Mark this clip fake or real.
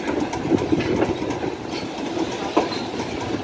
real